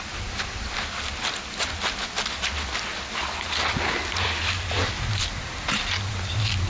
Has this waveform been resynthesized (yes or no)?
no